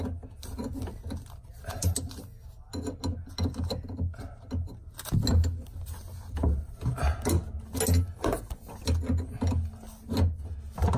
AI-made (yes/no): no